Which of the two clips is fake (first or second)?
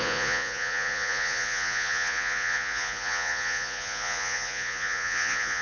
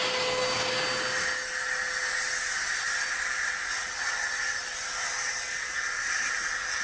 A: first